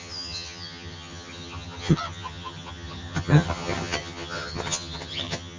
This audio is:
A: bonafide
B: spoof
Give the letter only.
B